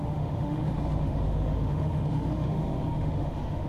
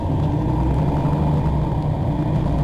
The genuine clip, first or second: second